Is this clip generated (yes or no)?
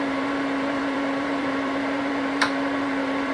yes